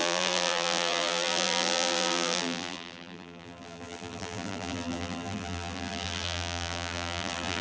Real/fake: fake